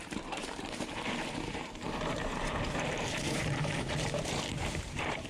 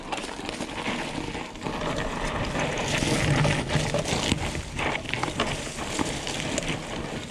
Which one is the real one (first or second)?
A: second